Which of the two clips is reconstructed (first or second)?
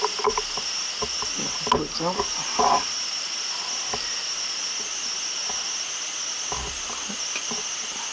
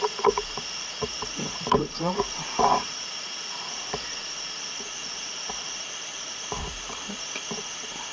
second